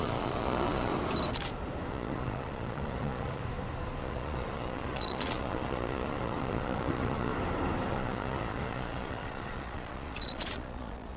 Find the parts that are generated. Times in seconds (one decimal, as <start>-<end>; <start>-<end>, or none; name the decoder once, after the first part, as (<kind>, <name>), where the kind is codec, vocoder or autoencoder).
0.0-0.9 (vocoder, Vocos); 1.9-3.4; 4.0-7.3; 7.9-11.2